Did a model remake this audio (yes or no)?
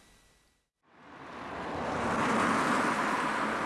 no